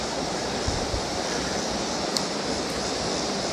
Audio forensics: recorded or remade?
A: remade